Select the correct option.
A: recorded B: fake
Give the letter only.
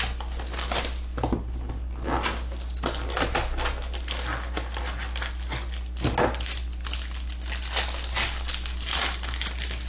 A